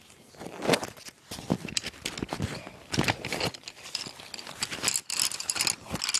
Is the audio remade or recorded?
recorded